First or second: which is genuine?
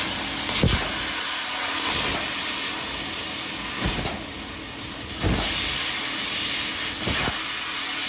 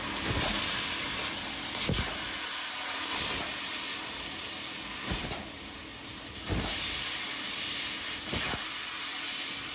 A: first